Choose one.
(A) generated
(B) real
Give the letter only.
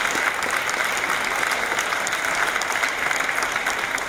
B